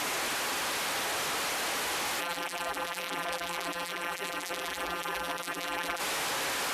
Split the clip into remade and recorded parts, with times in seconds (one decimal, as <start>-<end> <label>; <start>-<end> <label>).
0.0-2.2 recorded; 2.2-6.0 remade; 6.0-6.7 recorded